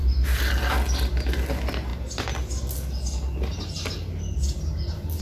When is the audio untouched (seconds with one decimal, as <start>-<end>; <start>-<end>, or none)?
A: 0.0-5.2